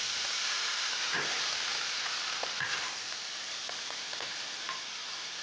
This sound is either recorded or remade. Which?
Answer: recorded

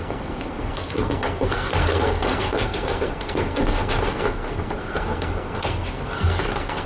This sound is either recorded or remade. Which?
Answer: remade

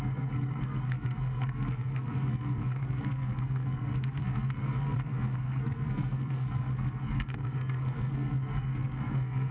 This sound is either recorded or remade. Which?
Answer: remade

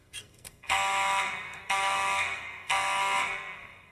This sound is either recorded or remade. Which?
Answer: remade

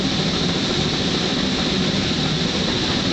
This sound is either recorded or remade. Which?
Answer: recorded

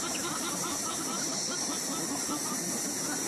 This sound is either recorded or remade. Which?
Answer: recorded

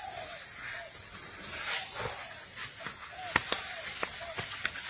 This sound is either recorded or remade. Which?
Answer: recorded